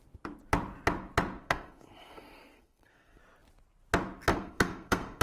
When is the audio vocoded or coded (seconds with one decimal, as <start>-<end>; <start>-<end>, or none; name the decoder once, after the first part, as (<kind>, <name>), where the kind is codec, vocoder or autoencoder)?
1.4-3.2 (codec, SNAC); 4.3-5.2